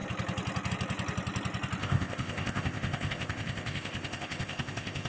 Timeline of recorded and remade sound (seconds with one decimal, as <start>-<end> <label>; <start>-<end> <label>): 0.0-1.8 recorded; 1.8-5.1 remade